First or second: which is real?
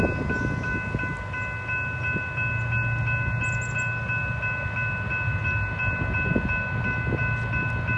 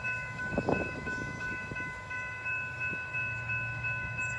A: first